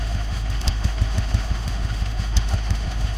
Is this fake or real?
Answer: fake